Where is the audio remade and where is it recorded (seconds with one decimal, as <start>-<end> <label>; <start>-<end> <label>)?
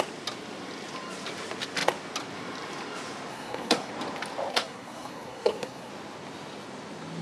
0.0-3.3 recorded; 3.3-3.9 remade; 3.9-4.5 recorded; 4.5-5.9 remade; 5.9-7.2 recorded